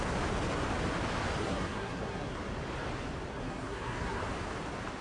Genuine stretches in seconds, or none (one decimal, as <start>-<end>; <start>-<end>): 0.0-1.4; 2.4-3.3; 4.2-5.0